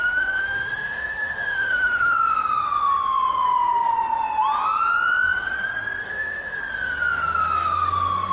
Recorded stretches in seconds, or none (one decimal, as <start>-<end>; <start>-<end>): 2.1-6.0; 6.6-8.3